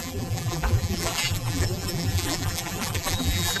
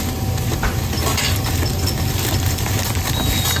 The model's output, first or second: first